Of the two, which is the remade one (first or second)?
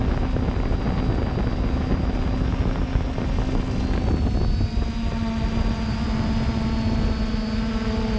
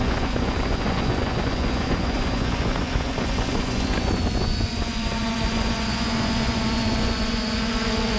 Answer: second